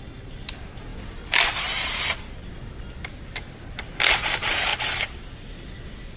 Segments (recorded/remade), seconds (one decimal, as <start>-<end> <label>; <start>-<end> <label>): 0.0-6.2 recorded